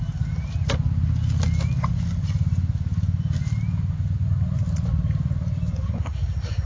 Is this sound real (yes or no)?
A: yes